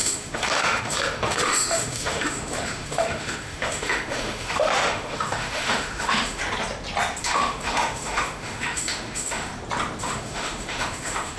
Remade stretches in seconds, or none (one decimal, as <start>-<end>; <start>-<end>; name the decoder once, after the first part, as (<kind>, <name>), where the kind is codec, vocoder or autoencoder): 0.0-6.4 (autoencoder, DAC-VAE); 7.2-9.5; 10.0-11.4